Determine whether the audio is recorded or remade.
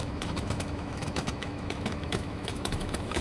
remade